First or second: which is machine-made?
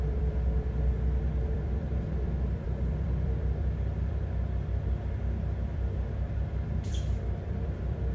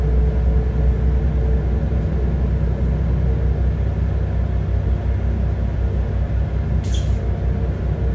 first